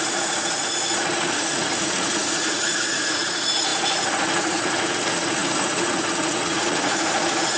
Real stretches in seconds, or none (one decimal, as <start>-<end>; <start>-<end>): none